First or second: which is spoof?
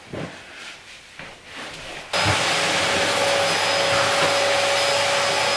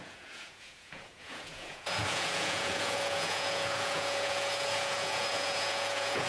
second